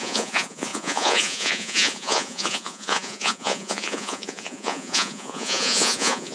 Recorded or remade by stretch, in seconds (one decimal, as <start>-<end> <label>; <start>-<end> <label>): 0.0-6.3 remade